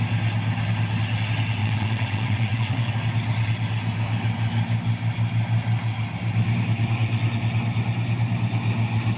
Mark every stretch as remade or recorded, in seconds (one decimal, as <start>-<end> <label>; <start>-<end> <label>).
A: 0.0-1.6 recorded; 1.6-2.9 remade; 2.9-9.2 recorded